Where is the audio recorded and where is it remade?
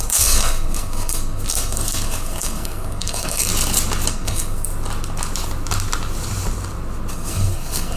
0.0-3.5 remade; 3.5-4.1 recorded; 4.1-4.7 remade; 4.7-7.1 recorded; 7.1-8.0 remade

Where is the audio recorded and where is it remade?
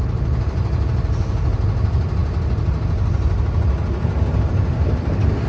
0.0-5.5 recorded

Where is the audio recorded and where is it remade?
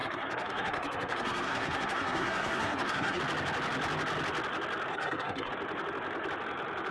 0.0-3.2 remade; 3.2-4.9 recorded; 4.9-5.5 remade; 5.5-6.9 recorded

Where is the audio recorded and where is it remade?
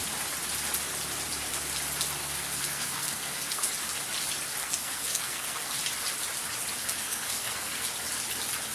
0.0-2.2 recorded; 2.2-3.7 remade; 3.7-4.6 recorded; 4.6-5.7 remade; 5.7-6.8 recorded; 6.8-7.9 remade; 7.9-8.7 recorded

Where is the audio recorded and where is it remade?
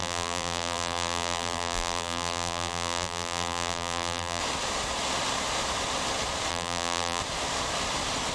0.0-4.4 remade; 4.4-6.5 recorded; 6.5-7.2 remade; 7.2-8.3 recorded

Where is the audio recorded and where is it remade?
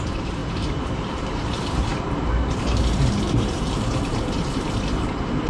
0.0-5.5 remade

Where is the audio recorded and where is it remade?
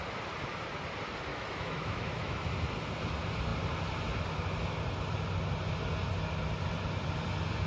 0.0-1.3 recorded; 1.3-2.5 remade; 2.5-7.7 recorded